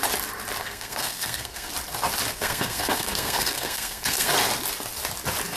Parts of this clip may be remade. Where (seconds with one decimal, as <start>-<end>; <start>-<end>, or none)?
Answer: 0.6-1.7; 2.3-4.3